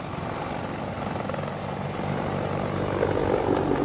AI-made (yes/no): no